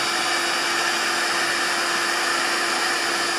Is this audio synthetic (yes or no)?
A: no